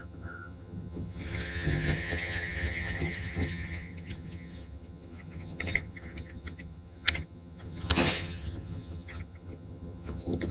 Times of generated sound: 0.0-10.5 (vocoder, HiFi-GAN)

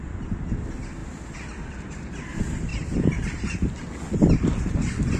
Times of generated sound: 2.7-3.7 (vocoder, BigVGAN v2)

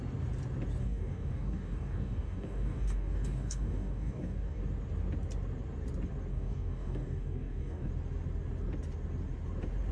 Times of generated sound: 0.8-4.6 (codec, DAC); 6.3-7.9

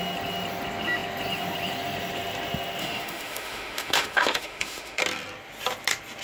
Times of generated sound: 2.8-5.0 (autoencoder, DAC-VAE)